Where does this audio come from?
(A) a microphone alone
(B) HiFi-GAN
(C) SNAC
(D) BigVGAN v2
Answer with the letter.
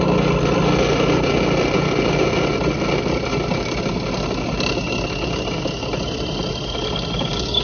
A